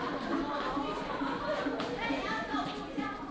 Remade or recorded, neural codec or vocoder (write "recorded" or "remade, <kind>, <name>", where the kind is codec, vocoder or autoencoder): recorded